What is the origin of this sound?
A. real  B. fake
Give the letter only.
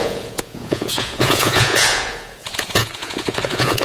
B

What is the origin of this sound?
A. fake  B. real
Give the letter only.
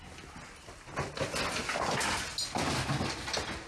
B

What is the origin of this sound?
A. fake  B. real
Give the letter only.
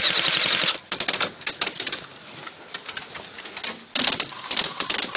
B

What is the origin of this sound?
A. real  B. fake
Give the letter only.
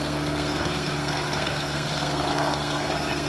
B